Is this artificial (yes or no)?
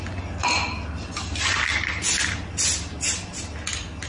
no